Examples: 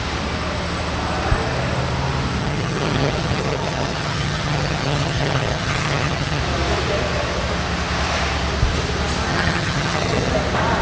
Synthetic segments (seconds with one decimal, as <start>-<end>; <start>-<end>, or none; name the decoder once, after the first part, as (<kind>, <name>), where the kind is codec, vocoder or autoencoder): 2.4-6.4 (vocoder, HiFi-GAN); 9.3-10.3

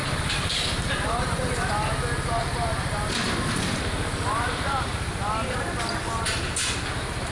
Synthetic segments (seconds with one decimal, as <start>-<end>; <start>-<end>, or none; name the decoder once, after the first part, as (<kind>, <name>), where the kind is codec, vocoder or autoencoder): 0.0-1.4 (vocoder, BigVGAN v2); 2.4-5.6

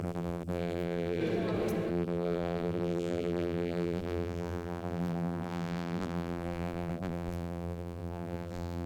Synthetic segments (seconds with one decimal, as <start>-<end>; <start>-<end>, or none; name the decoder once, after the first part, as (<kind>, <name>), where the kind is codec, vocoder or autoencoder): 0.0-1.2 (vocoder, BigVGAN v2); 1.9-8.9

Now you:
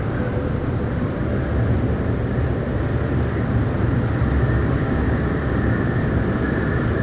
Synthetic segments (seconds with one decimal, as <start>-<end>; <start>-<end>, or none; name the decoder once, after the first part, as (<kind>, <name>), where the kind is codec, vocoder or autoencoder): 4.8-5.5 (codec, DAC)

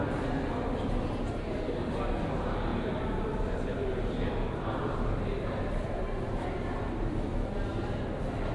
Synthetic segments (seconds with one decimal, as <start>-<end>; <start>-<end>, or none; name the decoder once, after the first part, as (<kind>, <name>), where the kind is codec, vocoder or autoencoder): 2.7-4.3 (vocoder, BigVGAN v2); 4.8-6.3

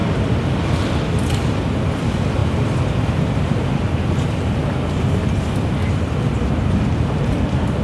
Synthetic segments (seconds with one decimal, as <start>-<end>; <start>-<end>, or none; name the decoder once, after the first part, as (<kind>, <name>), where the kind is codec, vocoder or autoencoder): none